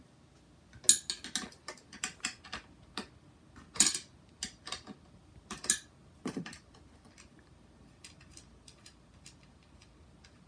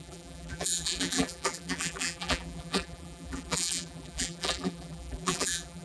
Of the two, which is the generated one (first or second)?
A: second